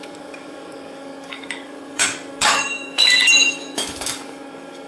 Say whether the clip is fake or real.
fake